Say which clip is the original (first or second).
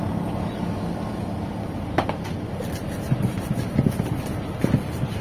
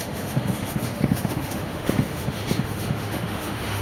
first